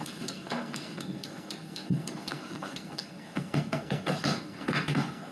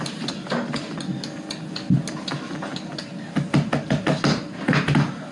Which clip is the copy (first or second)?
first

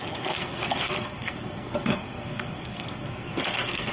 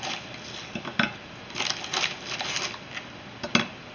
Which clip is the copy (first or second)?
first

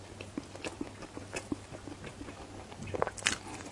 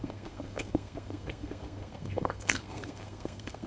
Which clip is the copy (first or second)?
second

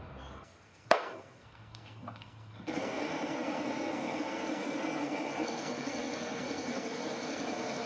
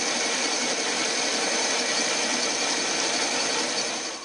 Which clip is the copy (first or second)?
first